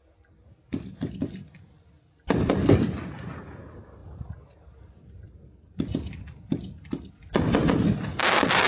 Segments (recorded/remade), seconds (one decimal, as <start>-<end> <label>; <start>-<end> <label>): 0.0-8.7 recorded